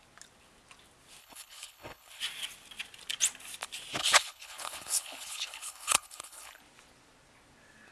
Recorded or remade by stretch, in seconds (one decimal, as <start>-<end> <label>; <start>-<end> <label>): 0.0-1.2 recorded; 1.2-2.2 remade; 2.2-4.0 recorded; 4.0-6.6 remade; 6.6-7.9 recorded